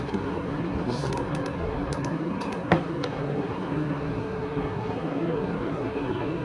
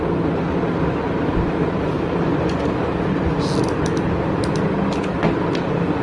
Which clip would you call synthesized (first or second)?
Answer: first